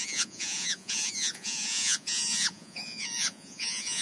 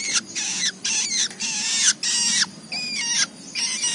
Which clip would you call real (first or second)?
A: second